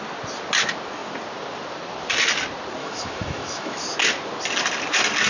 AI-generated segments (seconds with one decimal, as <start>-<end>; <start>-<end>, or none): 2.8-3.8

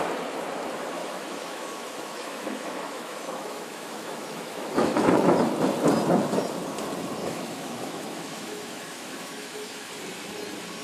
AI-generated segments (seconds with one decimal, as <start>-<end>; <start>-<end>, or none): 1.0-5.4; 7.2-9.9

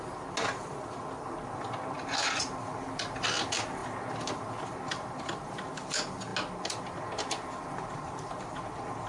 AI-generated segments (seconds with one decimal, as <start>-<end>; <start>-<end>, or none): none

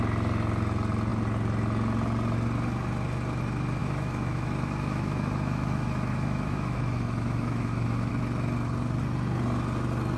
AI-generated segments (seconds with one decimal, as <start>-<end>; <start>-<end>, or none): 3.8-8.1